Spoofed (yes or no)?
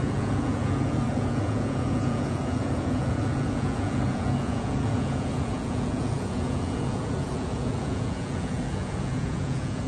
yes